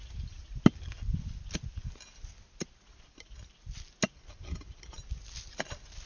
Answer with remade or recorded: recorded